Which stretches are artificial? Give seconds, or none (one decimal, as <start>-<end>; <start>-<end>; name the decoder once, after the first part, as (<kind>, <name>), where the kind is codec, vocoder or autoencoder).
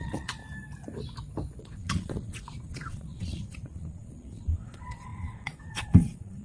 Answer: 0.0-0.4 (vocoder, Vocos); 1.6-6.4